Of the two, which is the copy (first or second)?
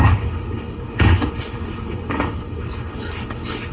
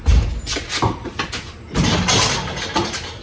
first